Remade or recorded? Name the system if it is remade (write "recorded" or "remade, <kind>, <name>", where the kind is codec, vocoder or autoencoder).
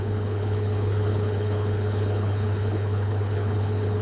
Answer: remade, codec, HILCodec